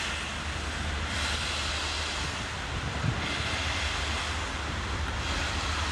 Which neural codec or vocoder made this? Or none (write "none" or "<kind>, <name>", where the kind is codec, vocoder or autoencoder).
none